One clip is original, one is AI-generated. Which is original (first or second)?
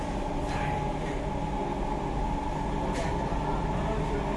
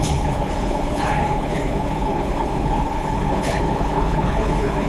first